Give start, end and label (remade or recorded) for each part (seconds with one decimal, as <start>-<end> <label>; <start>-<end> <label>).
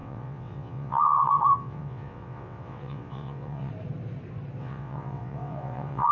0.0-3.7 remade; 3.7-4.6 recorded; 4.6-6.1 remade